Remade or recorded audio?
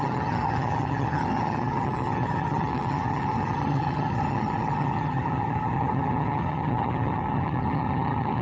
remade